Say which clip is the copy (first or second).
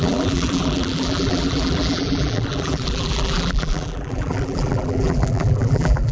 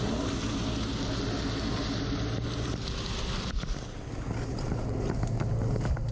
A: first